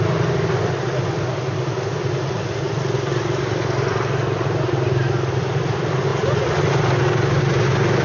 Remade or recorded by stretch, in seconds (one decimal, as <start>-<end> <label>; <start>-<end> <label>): 0.0-8.0 recorded

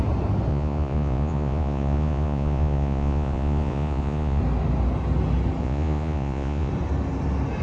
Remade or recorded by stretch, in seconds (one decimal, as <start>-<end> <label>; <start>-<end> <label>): 0.0-0.5 recorded; 0.5-4.4 remade; 4.4-5.6 recorded; 5.6-6.7 remade; 6.7-7.6 recorded

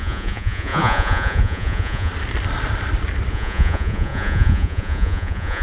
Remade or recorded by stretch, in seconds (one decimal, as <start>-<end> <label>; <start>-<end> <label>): 0.0-2.1 remade; 2.1-3.3 recorded; 3.3-5.6 remade

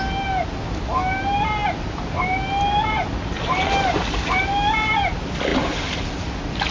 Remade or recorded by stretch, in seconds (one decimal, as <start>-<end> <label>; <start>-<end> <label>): 0.0-6.7 recorded

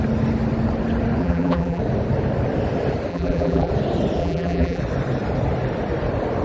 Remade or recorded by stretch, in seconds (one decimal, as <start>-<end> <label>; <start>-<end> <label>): 0.0-1.2 recorded; 1.2-1.8 remade; 1.8-3.1 recorded; 3.1-3.7 remade; 3.7-4.2 recorded; 4.2-4.8 remade; 4.8-6.4 recorded

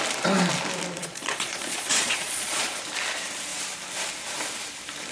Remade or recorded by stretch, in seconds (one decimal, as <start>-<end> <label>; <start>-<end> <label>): 0.0-1.0 recorded; 1.0-2.8 remade; 2.8-5.1 recorded

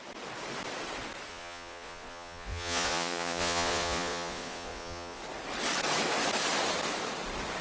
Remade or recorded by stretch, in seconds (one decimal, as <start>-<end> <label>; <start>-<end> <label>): 0.0-1.3 recorded; 1.3-5.2 remade; 5.2-7.6 recorded